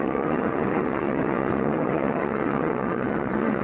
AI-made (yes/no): yes